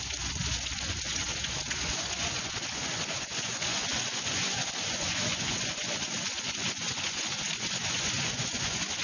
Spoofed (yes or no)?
yes